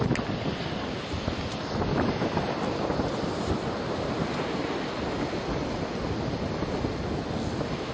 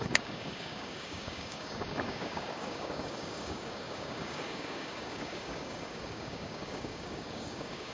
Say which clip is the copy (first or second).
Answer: second